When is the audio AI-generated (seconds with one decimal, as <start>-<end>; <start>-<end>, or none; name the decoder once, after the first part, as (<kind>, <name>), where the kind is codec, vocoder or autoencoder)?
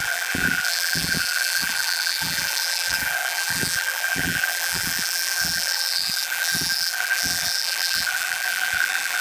0.0-9.2 (vocoder, BigVGAN v2)